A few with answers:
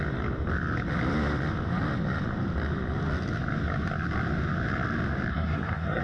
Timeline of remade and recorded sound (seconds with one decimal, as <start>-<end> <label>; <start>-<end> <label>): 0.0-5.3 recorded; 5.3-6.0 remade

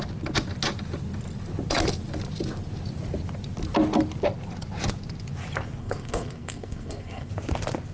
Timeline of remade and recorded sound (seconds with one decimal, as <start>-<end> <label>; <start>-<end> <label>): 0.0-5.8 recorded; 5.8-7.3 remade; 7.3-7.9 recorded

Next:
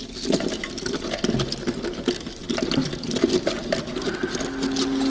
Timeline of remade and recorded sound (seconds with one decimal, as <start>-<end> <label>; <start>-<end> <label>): 0.0-5.1 recorded